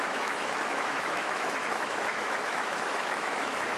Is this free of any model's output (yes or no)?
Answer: no